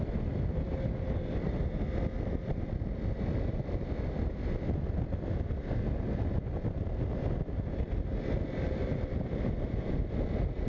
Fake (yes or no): no